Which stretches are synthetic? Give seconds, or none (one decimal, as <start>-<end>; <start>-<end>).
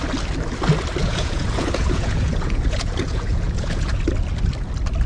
1.0-4.0